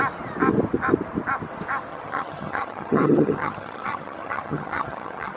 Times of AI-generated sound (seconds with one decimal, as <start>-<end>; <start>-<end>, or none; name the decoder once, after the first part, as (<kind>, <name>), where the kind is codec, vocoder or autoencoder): 1.9-5.4 (vocoder, HiFi-GAN)